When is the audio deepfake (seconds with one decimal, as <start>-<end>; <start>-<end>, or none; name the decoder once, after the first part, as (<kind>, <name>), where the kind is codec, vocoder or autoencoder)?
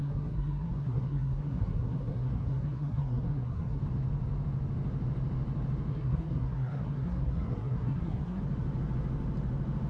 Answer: 0.0-3.8 (codec, SNAC); 5.9-8.4